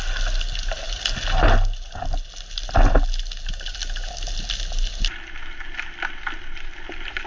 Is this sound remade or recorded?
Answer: recorded